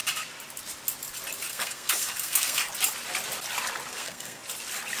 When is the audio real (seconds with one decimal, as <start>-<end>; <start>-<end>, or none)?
0.0-1.5; 2.7-3.9; 4.4-5.0